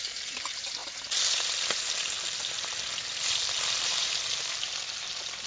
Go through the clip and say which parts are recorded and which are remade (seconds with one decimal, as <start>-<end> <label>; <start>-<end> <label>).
0.0-5.5 recorded